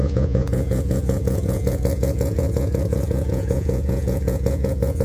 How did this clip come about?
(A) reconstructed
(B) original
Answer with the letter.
A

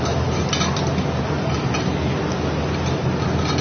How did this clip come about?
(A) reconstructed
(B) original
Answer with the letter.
B